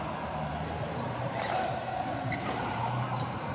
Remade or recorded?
remade